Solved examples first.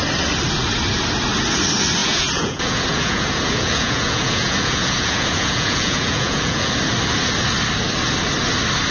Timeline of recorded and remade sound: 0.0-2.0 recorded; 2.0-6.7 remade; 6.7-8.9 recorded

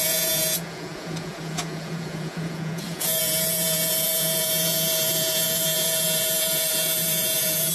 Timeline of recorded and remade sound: 0.0-7.7 remade

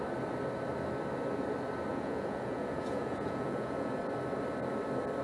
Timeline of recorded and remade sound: 0.0-1.9 recorded; 1.9-3.9 remade; 3.9-5.2 recorded

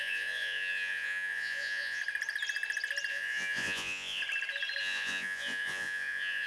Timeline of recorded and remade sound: 0.0-2.0 remade; 2.0-3.1 recorded; 3.1-4.2 remade; 4.2-4.8 recorded; 4.8-6.5 remade